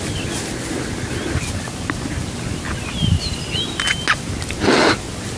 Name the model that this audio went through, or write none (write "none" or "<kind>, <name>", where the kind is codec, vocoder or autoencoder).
none